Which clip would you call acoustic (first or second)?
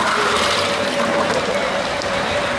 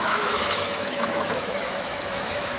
first